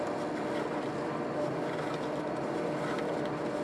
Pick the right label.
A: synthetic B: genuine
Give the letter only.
B